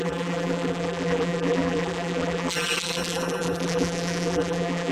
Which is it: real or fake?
fake